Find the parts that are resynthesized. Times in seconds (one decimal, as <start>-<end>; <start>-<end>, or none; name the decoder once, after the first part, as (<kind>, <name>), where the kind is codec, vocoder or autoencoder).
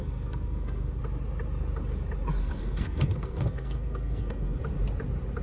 0.0-1.0 (codec, SNAC); 2.4-4.6